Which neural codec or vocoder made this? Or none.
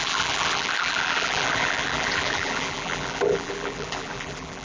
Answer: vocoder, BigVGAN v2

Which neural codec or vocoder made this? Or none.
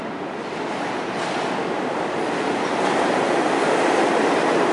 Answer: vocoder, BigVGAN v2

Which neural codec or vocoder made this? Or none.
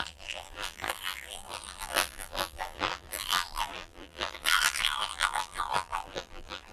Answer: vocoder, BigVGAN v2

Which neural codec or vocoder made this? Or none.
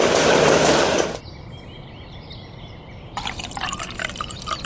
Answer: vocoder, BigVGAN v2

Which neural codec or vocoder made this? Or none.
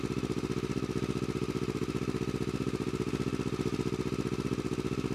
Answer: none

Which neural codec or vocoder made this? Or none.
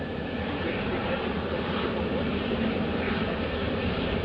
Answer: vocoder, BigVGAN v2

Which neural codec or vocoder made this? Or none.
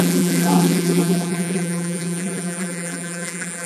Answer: vocoder, BigVGAN v2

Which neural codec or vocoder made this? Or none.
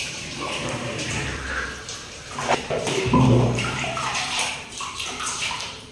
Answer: vocoder, BigVGAN v2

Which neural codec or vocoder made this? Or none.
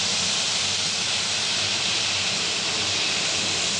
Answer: none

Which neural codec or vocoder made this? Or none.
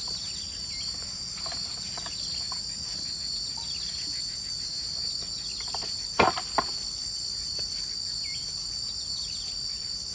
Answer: none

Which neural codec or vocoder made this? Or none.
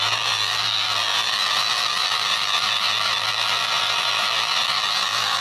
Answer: vocoder, BigVGAN v2